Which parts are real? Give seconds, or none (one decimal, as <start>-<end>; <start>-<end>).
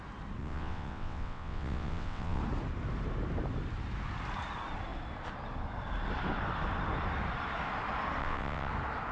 0.0-0.4; 2.4-8.2; 8.7-9.1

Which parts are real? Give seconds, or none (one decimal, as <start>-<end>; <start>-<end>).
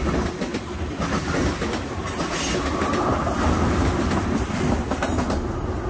0.0-5.9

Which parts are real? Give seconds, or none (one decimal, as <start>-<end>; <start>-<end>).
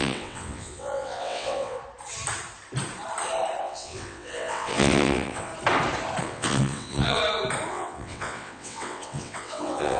1.8-3.6; 5.5-6.2; 7.2-7.7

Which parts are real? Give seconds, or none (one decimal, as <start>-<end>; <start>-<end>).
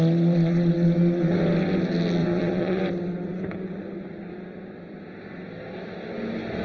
0.0-2.2; 2.8-6.6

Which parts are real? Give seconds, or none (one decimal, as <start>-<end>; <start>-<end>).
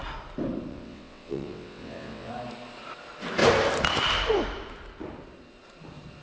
0.0-0.7; 2.3-6.2